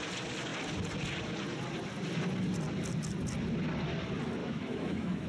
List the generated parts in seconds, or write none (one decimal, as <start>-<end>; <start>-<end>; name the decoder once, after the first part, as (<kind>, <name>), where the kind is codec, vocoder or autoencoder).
4.4-5.3 (autoencoder, DAC-VAE)